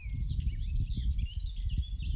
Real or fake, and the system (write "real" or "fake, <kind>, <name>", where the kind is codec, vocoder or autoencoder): real